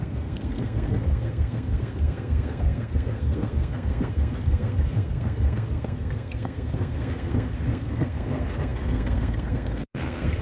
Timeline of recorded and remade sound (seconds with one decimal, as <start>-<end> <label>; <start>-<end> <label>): 0.0-10.4 remade